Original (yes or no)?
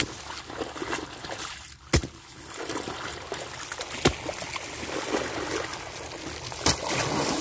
yes